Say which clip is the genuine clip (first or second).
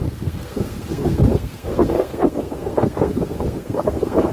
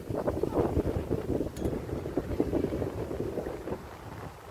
second